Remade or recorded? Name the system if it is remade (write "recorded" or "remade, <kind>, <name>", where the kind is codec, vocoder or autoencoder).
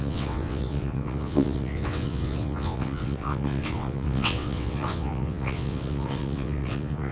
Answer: remade, vocoder, WaveNeXt